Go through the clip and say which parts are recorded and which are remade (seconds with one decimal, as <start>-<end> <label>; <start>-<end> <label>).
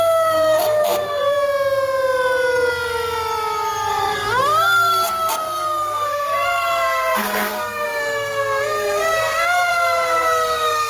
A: 0.0-1.2 remade; 1.2-3.9 recorded; 3.9-10.9 remade